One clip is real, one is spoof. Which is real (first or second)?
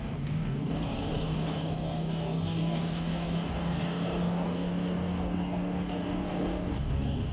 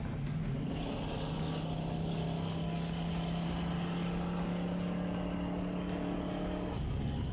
second